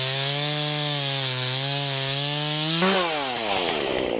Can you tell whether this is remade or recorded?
recorded